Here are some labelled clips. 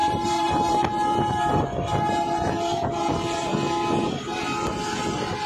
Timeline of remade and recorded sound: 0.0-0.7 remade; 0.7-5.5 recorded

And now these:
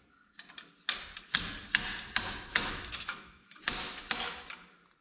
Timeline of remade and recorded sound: 0.0-2.5 recorded; 2.5-4.1 remade; 4.1-5.0 recorded